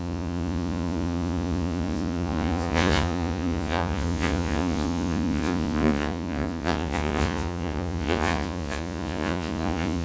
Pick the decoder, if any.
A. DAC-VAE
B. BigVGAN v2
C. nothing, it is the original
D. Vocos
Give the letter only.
D